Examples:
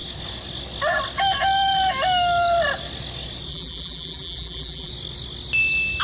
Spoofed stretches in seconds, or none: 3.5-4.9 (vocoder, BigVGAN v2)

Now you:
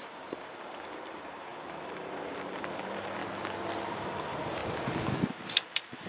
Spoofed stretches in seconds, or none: 0.0-3.2 (vocoder, BigVGAN v2); 3.9-4.6; 5.3-6.1

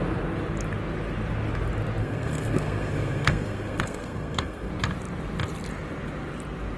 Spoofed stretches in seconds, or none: 2.0-4.7 (codec, SNAC)

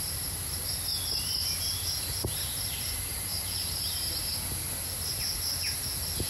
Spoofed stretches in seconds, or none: 3.3-5.6 (vocoder, BigVGAN v2)